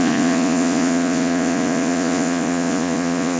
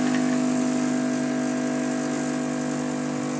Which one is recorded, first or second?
second